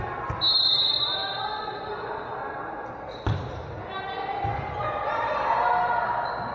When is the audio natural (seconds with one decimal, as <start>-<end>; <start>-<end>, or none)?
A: 0.0-6.5